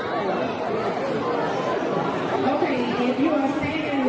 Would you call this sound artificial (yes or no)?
no